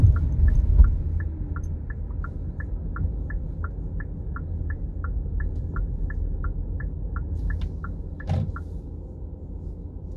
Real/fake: real